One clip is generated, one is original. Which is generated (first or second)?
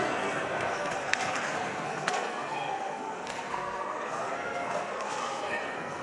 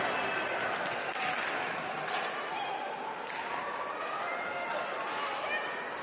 first